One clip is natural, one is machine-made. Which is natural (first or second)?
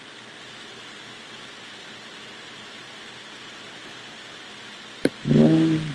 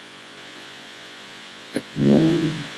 first